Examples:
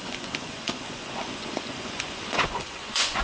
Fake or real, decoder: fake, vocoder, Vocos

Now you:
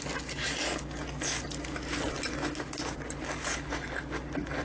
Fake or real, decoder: real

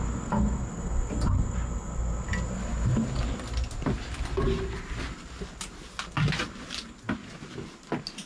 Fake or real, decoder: real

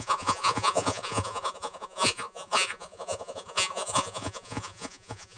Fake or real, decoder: fake, vocoder, Vocos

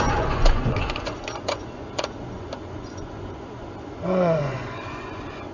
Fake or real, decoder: fake, vocoder, Vocos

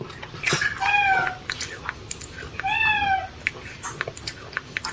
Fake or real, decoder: real